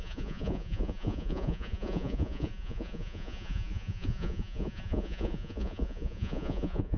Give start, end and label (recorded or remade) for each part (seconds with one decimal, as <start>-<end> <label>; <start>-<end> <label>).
0.0-7.0 remade